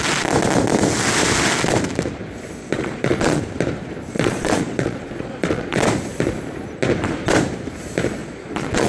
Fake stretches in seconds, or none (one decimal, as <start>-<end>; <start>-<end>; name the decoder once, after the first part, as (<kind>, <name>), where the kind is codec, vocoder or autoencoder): 2.6-3.4 (vocoder, Vocos); 4.1-5.8; 8.2-8.9